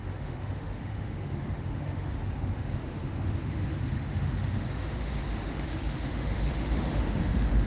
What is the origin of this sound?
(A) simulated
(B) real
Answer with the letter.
A